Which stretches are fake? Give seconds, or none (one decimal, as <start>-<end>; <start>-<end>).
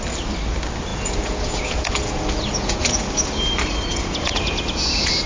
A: 0.9-3.1; 3.9-4.6